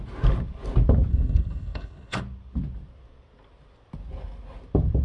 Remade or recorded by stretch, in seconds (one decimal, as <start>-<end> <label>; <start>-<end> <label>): 0.0-1.1 recorded; 1.1-2.2 remade; 2.2-5.0 recorded